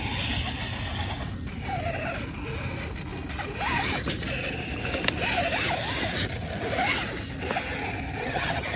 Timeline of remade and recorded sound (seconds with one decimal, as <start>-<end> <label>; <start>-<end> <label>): 0.0-8.2 recorded; 8.2-8.8 remade